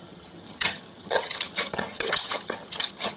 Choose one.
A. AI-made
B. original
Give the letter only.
A